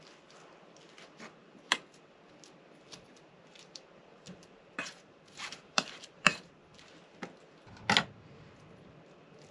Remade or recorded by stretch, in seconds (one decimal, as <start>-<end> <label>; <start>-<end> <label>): 0.0-1.4 recorded; 1.4-2.0 remade; 2.0-4.1 recorded; 4.1-6.5 remade; 6.5-9.5 recorded